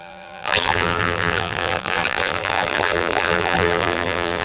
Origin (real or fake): fake